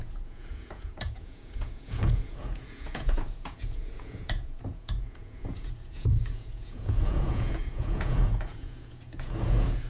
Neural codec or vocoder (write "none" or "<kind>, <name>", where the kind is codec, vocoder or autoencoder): vocoder, Vocos